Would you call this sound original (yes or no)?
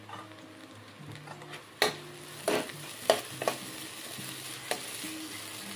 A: yes